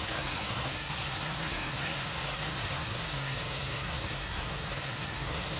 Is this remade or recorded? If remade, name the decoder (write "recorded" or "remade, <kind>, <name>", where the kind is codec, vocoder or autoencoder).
remade, codec, SNAC